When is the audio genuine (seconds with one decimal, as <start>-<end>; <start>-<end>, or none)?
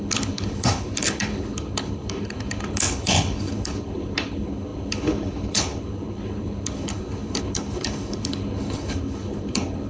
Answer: none